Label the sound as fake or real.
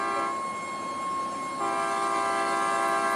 real